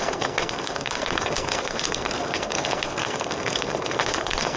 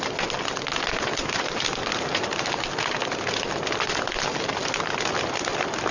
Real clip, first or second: second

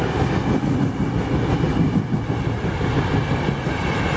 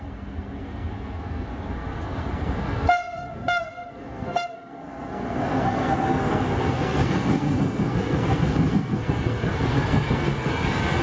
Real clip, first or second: first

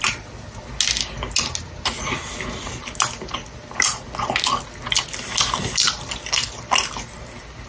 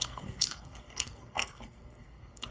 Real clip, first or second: first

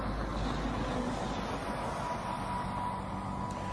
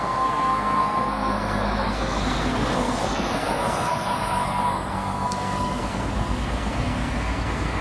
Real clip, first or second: first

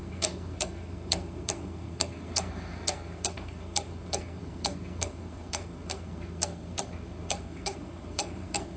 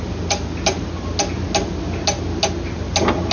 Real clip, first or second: second